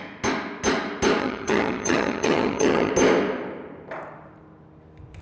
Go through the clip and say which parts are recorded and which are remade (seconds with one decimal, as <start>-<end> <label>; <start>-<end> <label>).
0.0-1.2 recorded; 1.2-2.9 remade; 2.9-5.2 recorded